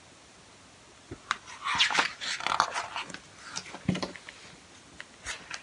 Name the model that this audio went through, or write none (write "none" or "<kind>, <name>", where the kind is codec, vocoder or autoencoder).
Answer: none